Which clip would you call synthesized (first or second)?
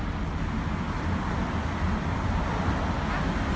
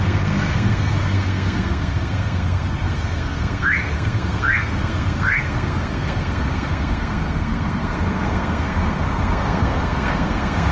second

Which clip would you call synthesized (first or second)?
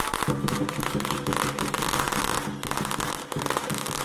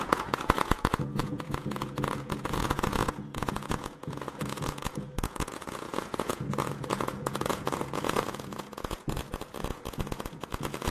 second